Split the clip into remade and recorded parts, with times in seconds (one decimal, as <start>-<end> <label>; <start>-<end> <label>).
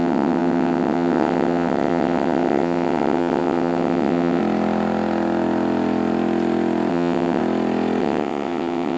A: 0.0-4.4 remade; 4.4-6.9 recorded; 6.9-7.4 remade; 7.4-8.0 recorded; 8.0-9.0 remade